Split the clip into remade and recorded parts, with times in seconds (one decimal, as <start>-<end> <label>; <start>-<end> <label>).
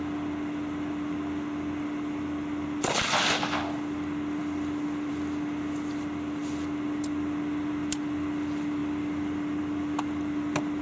0.0-10.8 recorded